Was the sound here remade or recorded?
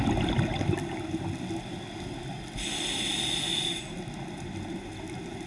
recorded